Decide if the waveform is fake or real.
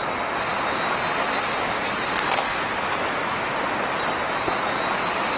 real